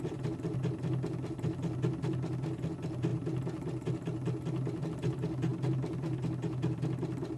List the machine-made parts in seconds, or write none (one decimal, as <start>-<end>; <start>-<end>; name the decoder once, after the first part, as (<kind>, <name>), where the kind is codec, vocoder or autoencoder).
none